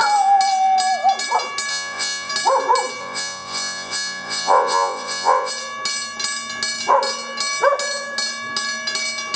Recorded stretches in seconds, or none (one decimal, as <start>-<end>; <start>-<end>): 0.0-1.7; 2.3-3.0; 5.5-9.4